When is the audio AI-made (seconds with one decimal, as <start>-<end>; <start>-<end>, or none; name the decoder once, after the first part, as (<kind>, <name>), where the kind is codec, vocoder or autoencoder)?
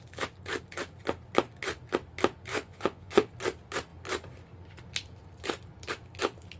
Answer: 2.5-3.3 (vocoder, Vocos)